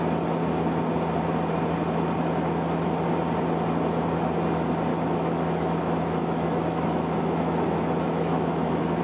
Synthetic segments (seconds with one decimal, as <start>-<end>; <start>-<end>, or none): 4.9-9.0